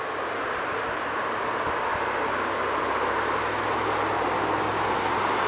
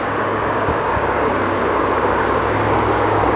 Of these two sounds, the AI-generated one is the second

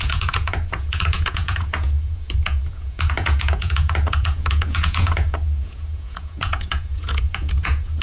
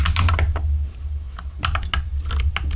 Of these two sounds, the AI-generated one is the first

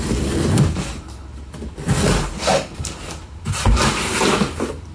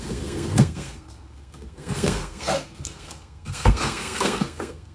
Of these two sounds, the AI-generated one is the second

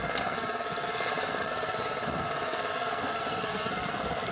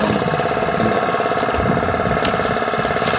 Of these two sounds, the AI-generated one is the first